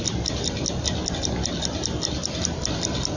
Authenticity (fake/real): real